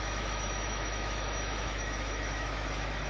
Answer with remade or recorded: remade